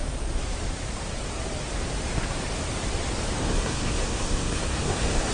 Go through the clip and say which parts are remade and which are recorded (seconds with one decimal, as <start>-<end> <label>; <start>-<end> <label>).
0.0-3.4 recorded; 3.4-5.3 remade